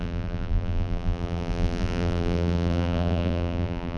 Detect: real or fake fake